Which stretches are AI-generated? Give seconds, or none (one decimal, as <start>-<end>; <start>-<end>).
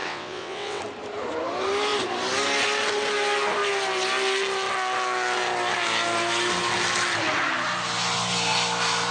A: 0.0-0.8